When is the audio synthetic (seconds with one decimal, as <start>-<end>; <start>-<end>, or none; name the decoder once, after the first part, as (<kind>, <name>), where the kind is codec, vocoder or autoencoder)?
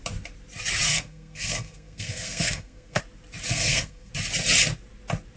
0.9-3.0 (codec, SNAC); 3.5-4.1